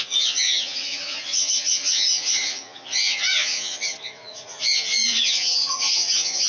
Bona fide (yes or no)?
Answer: no